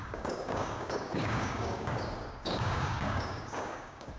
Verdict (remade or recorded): remade